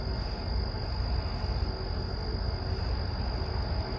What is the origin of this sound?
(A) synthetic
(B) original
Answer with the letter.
B